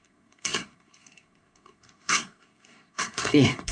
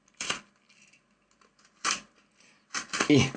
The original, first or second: second